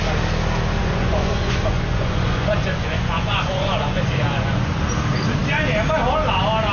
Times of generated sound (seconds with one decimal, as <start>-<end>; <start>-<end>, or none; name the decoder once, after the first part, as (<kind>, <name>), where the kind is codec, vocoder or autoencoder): 0.8-4.8 (vocoder, Vocos)